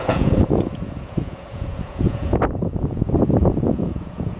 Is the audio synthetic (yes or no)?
yes